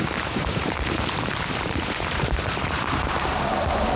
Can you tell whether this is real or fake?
fake